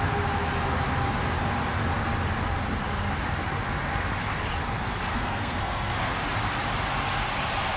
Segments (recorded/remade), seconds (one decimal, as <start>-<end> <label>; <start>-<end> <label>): 0.0-5.1 recorded; 5.1-6.1 remade; 6.1-7.8 recorded